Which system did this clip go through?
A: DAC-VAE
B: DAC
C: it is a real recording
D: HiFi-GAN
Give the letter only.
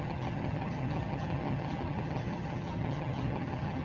D